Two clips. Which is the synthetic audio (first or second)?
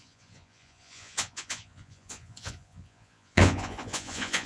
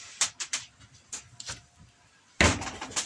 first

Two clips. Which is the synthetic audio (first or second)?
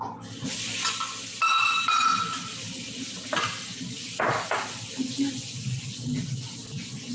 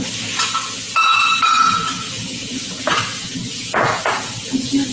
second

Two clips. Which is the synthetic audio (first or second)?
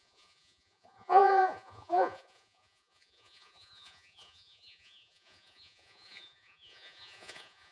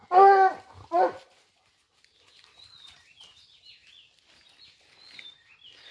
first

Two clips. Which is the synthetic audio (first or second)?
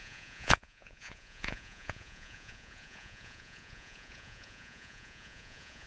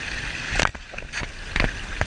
first